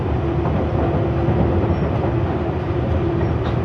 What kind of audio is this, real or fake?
real